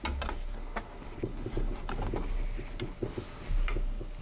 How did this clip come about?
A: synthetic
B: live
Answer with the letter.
B